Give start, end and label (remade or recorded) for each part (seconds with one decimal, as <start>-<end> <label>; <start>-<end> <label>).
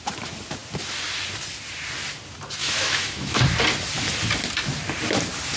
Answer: 0.0-2.6 recorded; 2.6-3.4 remade; 3.4-5.6 recorded